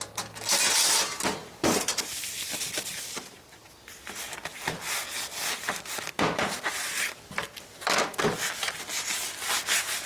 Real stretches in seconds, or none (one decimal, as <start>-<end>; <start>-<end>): 0.0-10.1